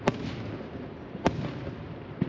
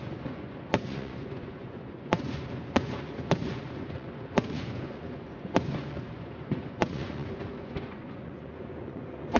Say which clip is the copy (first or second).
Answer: second